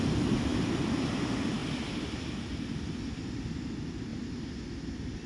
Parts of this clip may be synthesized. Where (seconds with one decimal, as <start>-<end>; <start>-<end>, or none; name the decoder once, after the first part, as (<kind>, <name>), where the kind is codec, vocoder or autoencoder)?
0.5-1.1 (vocoder, BigVGAN v2)